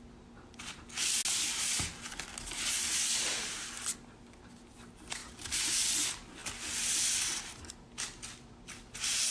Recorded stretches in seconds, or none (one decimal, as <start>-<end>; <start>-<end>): 0.0-9.3